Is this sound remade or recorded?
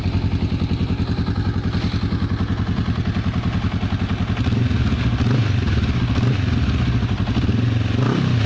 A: recorded